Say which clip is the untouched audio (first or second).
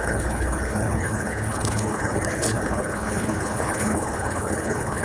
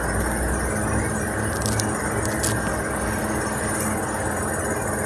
second